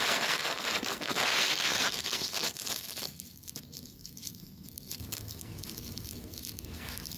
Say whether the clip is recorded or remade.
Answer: remade